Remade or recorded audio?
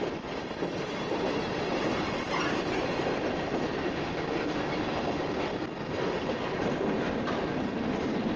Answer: recorded